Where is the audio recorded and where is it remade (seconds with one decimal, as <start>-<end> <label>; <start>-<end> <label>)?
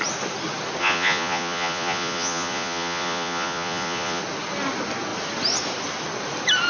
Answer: 0.0-0.8 recorded; 0.8-4.2 remade; 4.2-6.7 recorded